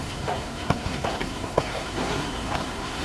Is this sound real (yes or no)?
no